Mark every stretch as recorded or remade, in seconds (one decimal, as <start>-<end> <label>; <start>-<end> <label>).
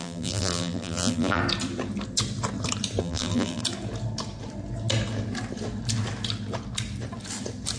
0.0-1.4 remade; 1.4-3.0 recorded; 3.0-3.6 remade; 3.6-7.8 recorded